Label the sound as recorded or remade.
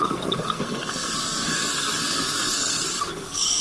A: remade